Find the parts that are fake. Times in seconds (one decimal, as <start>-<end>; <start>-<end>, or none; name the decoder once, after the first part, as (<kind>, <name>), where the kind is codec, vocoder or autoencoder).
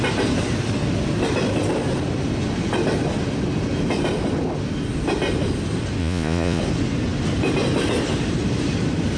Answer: 6.0-6.6 (vocoder, Vocos)